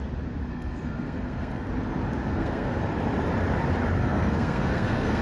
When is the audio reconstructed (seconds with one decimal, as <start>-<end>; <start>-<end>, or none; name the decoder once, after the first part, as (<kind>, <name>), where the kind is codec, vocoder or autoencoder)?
0.5-1.7 (codec, SNAC); 2.3-2.8; 4.0-5.2